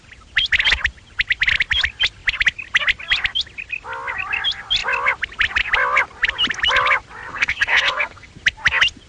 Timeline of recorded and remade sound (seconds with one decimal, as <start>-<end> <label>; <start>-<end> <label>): 0.0-7.3 recorded; 7.3-8.3 remade; 8.3-9.1 recorded